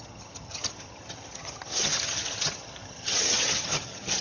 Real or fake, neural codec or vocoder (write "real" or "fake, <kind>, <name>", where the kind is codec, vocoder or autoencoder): fake, vocoder, HiFi-GAN